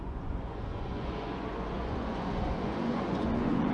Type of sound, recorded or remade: remade